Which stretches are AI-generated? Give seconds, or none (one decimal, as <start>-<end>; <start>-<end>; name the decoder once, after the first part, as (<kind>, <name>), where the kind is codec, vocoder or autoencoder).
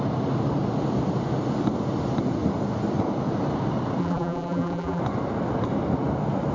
4.0-5.0 (vocoder, BigVGAN v2)